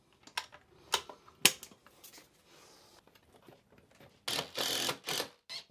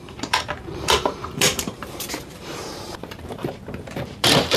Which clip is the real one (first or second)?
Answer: first